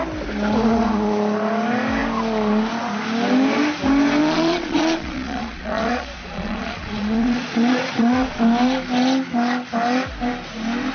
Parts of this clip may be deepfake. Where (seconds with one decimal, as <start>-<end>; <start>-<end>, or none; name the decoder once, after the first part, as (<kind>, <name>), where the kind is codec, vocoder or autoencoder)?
4.2-8.4 (vocoder, Vocos)